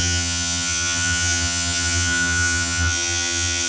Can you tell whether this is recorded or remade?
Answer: remade